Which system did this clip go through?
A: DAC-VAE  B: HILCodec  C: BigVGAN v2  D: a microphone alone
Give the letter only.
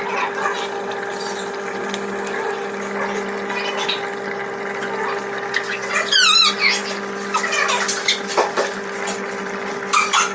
D